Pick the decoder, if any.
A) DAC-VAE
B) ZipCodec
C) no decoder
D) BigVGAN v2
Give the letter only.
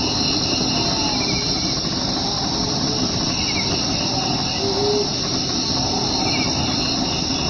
C